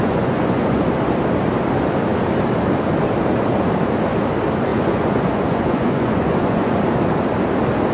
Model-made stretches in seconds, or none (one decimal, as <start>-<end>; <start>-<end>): 0.0-0.9; 4.7-6.8